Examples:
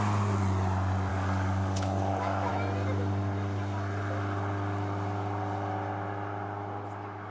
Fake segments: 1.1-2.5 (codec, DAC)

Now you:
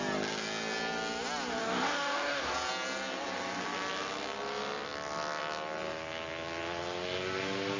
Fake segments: 1.6-2.5 (codec, DAC)

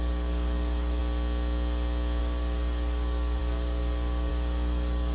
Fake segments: 0.0-1.0 (codec, DAC); 2.2-5.1

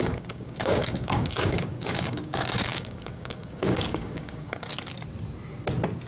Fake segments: 0.0-4.7 (codec, DAC)

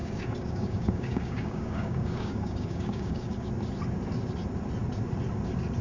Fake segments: 0.0-3.5 (codec, DAC)

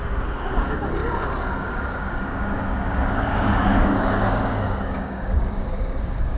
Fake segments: 0.0-1.0 (codec, DAC); 1.6-6.4